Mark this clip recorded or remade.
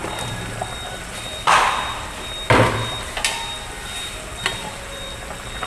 recorded